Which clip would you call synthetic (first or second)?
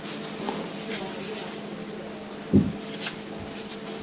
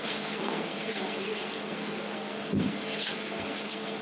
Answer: second